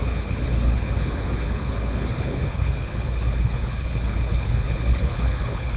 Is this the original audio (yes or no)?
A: no